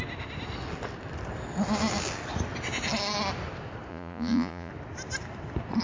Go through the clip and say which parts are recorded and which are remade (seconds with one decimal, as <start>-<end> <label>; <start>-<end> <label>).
0.0-3.9 recorded; 3.9-4.7 remade; 4.7-5.8 recorded